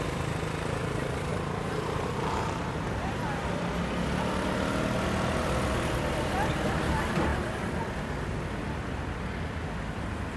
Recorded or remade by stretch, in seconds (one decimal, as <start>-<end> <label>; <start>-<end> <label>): 0.0-1.3 recorded; 1.3-3.4 remade; 3.4-10.4 recorded